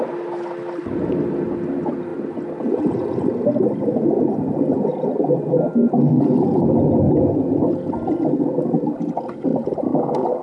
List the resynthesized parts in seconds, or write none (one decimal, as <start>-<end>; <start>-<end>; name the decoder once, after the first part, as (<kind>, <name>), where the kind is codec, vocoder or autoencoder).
none